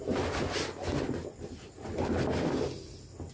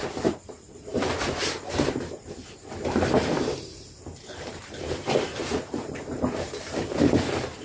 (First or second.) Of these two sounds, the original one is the first